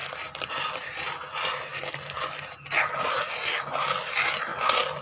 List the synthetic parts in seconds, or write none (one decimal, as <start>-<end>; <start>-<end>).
none